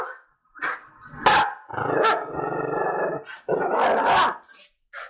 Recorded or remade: recorded